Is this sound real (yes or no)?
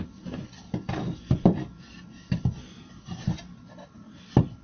yes